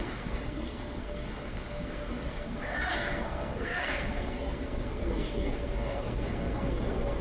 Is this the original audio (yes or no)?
no